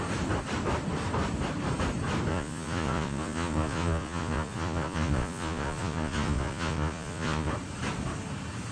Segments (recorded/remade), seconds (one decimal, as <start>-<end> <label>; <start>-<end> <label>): 0.0-2.3 recorded; 2.3-7.5 remade; 7.5-8.7 recorded